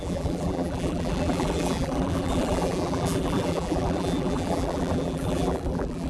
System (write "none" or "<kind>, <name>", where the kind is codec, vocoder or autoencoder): vocoder, BigVGAN v2